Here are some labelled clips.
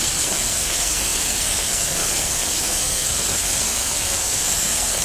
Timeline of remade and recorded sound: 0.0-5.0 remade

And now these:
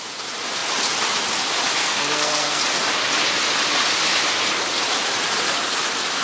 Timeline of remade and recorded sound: 0.0-1.8 recorded; 1.8-2.6 remade; 2.6-6.2 recorded